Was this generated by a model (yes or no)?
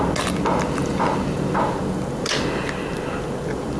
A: no